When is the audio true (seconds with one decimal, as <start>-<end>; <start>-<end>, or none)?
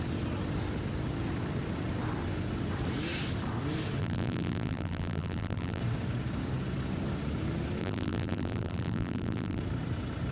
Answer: 0.0-4.0; 5.8-7.8; 9.6-10.3